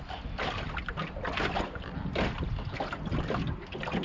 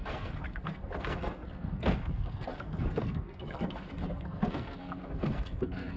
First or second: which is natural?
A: first